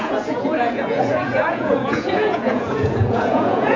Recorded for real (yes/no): no